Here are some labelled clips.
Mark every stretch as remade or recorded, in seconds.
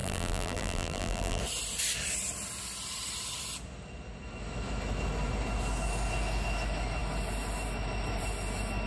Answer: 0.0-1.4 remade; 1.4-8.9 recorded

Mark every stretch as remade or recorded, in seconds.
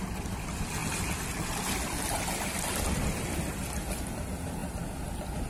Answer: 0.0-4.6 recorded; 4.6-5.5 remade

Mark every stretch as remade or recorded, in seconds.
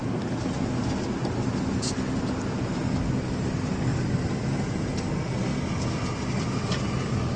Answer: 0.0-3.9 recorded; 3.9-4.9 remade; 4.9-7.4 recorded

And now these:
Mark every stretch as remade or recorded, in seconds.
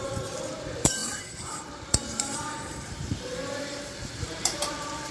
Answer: 0.0-5.1 remade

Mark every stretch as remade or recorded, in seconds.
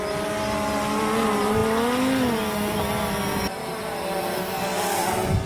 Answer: 0.0-5.5 recorded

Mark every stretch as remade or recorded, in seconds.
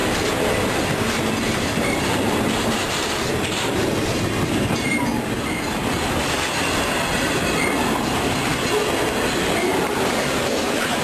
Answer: 0.0-1.2 recorded; 1.2-5.1 remade; 5.1-7.9 recorded; 7.9-8.5 remade; 8.5-10.1 recorded; 10.1-11.0 remade